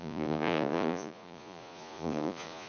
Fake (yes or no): yes